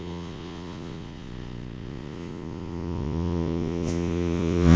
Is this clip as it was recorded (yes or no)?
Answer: no